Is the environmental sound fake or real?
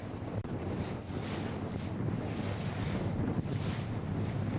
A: real